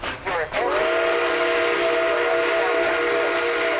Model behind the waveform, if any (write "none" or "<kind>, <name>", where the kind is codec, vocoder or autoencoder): none